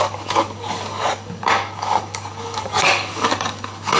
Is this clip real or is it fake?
fake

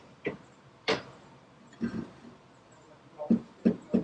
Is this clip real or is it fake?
fake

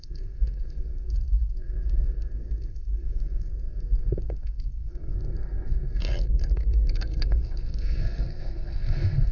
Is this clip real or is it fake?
fake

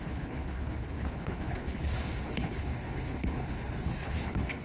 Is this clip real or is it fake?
fake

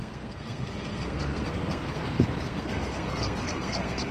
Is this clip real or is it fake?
fake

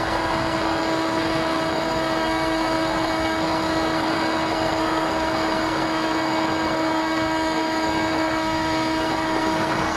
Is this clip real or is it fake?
fake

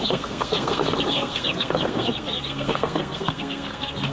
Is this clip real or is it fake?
fake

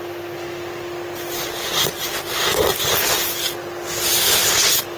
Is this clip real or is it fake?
real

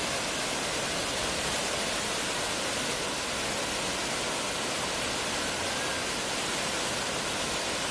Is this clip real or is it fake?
real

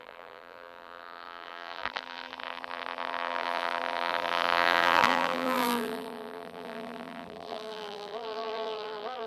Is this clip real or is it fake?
fake